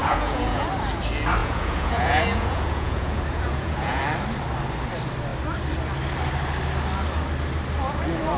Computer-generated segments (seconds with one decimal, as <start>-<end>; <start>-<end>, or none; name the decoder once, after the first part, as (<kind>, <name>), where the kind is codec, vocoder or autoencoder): 0.0-0.7 (vocoder, Vocos); 1.4-4.0